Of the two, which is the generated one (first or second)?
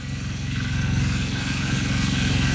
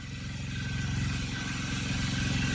first